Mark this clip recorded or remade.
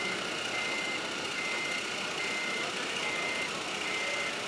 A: recorded